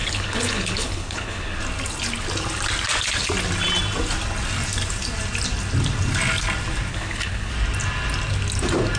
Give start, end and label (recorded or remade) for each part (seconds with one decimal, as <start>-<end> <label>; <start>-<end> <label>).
0.0-1.6 remade; 1.6-6.9 recorded; 6.9-7.5 remade; 7.5-9.0 recorded